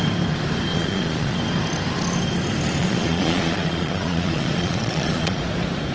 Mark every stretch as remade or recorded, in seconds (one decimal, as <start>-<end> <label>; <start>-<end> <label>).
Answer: 0.0-0.7 recorded; 0.7-1.4 remade; 1.4-2.8 recorded; 2.8-5.4 remade; 5.4-5.9 recorded